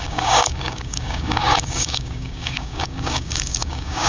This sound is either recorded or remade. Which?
remade